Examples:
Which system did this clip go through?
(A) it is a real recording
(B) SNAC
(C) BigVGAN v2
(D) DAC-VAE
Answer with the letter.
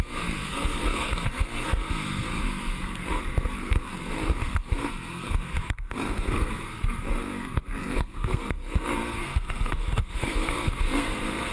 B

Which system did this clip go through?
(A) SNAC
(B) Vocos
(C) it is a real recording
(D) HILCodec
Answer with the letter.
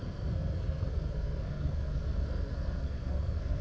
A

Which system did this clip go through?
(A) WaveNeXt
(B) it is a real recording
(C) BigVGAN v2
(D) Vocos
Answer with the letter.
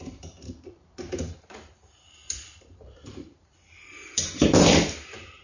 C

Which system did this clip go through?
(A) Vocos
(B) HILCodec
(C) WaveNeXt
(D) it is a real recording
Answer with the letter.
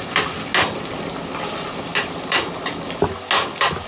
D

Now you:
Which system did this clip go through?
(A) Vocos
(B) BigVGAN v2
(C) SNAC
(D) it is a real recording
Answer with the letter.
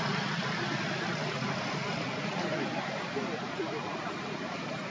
B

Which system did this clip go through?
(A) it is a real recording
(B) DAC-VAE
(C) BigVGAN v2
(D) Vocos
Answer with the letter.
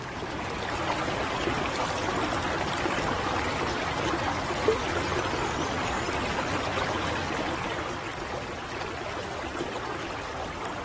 A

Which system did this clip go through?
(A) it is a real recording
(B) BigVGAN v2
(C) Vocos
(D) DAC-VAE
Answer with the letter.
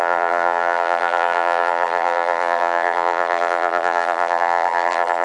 B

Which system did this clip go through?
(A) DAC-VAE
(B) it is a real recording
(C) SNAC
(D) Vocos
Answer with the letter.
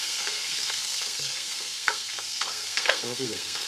C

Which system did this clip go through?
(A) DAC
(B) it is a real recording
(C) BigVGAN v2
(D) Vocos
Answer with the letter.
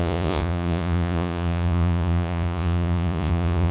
D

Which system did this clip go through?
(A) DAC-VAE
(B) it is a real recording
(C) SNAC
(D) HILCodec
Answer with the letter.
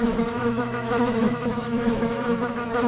A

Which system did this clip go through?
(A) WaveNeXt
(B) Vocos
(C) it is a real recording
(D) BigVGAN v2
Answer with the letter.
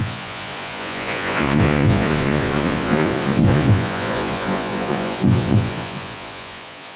B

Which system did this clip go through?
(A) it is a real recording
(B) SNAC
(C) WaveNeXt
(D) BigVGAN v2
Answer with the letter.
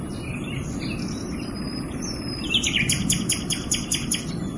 A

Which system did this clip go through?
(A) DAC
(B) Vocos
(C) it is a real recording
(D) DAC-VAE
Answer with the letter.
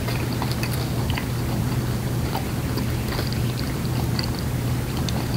C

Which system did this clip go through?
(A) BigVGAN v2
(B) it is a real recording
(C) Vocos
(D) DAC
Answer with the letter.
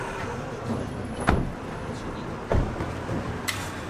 A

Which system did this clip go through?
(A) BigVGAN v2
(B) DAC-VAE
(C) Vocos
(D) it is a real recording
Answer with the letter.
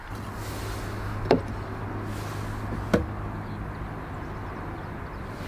D